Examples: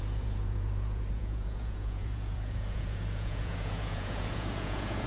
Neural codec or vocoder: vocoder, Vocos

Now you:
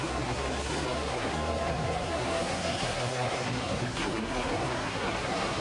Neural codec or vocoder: codec, SNAC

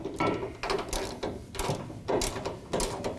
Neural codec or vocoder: none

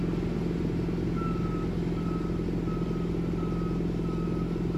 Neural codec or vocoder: none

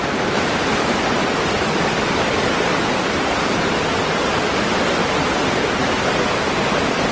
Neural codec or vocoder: none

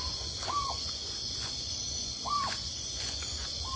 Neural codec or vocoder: vocoder, Vocos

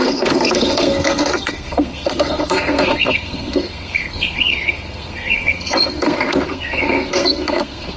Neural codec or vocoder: codec, SNAC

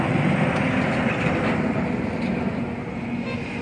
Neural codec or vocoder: none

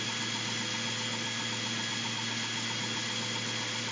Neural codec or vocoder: none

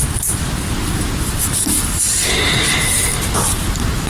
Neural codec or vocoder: vocoder, BigVGAN v2